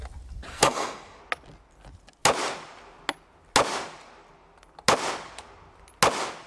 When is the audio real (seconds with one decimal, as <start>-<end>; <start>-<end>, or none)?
0.0-0.5; 1.2-6.5